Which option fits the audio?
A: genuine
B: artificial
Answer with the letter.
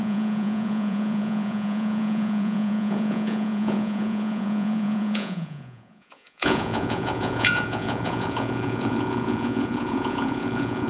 B